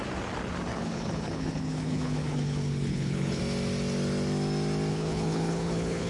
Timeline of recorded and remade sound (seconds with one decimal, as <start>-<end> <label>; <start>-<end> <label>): 0.0-0.7 recorded; 0.7-3.4 remade; 3.4-4.9 recorded; 4.9-6.1 remade